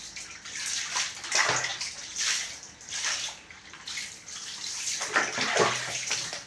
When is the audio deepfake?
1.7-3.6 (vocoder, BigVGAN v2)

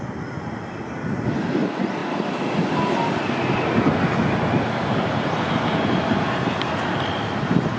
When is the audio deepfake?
none

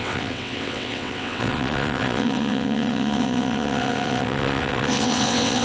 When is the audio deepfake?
0.0-5.6 (vocoder, WaveNeXt)

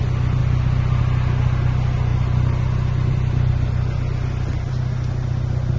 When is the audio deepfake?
none